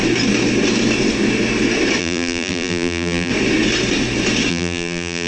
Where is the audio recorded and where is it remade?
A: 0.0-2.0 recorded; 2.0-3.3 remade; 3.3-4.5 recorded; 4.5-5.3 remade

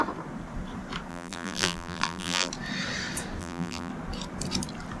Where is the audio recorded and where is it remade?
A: 0.0-1.1 recorded; 1.1-2.5 remade; 2.5-3.4 recorded; 3.4-3.9 remade; 3.9-5.0 recorded

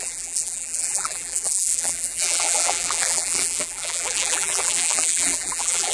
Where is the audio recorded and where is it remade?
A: 0.0-5.9 remade

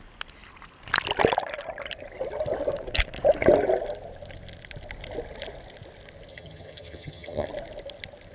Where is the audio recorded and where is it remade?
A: 0.0-6.3 recorded; 6.3-7.5 remade; 7.5-8.3 recorded

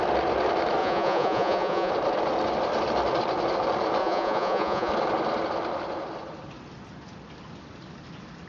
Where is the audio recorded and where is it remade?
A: 0.0-0.8 recorded; 0.8-1.9 remade; 1.9-4.0 recorded; 4.0-4.9 remade; 4.9-8.5 recorded